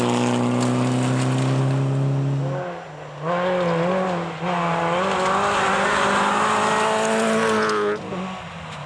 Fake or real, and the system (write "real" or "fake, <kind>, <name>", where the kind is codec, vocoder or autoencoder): real